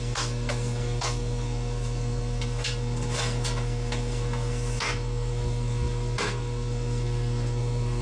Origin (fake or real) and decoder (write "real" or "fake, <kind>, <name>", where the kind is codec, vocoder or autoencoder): fake, codec, SNAC